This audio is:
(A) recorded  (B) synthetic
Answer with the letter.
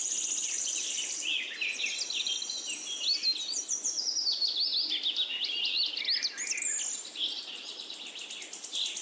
A